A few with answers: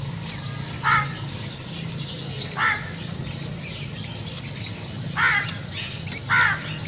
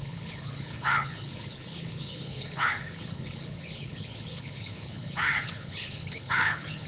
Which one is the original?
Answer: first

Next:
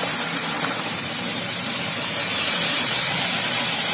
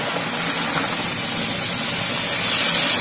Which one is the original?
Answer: second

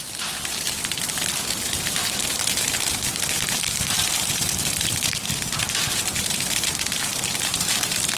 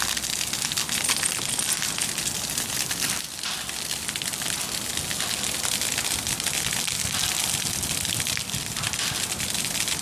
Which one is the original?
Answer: second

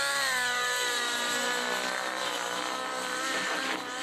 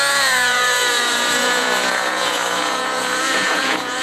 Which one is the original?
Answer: first